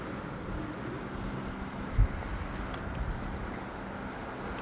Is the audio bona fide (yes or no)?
yes